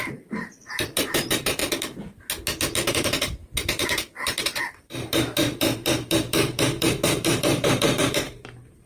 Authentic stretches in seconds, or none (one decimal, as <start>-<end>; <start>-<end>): 1.6-2.9; 3.4-4.6